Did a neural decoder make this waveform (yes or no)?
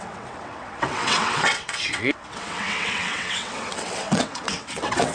yes